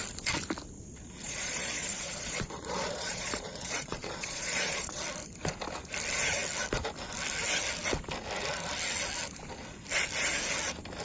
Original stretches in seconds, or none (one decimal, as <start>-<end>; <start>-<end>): 0.0-1.2; 5.0-11.0